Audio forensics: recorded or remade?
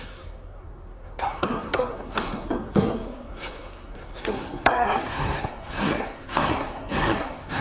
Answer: remade